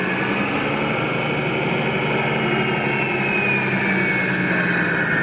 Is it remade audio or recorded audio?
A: recorded